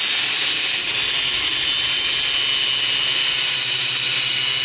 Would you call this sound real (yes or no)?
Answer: yes